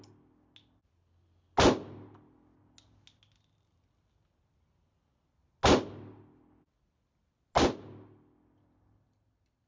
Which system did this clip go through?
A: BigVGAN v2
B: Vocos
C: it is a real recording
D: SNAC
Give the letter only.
C